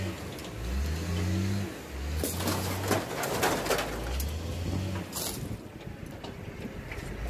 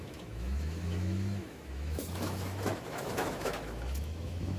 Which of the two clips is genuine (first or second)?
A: first